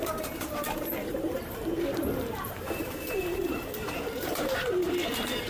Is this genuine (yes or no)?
no